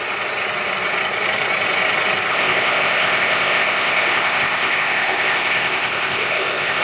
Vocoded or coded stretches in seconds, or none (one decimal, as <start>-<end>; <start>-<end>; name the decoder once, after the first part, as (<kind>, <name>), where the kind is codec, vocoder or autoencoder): 2.3-6.8 (codec, ZipCodec)